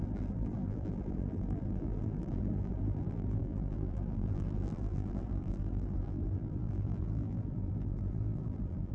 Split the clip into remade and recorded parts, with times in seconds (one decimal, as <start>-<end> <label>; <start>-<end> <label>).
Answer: 0.0-8.9 remade